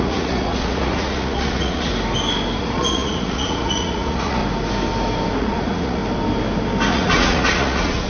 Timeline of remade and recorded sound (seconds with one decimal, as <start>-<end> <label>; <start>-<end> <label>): 0.0-1.9 remade; 1.9-2.6 recorded; 2.6-4.4 remade; 4.4-5.4 recorded; 5.4-6.0 remade; 6.0-6.9 recorded; 6.9-8.1 remade